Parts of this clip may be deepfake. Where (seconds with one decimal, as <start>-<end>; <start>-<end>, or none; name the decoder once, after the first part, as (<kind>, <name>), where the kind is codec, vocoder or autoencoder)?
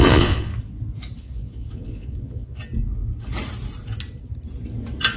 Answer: 0.0-0.5 (vocoder, Vocos); 1.2-2.6